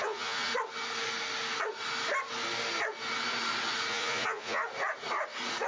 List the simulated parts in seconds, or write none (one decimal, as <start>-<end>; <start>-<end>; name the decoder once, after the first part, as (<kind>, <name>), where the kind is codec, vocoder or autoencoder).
0.0-0.5 (vocoder, Vocos); 3.9-4.6